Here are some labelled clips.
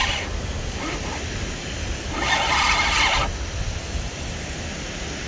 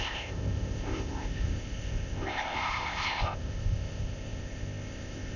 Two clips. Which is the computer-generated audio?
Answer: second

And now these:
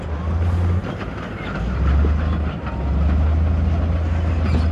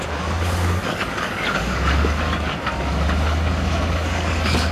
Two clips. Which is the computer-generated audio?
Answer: second